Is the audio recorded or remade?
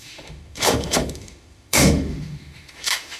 remade